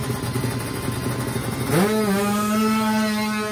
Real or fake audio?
real